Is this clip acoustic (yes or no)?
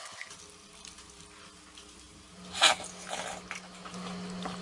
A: yes